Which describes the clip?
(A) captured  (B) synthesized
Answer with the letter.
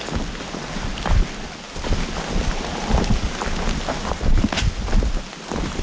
A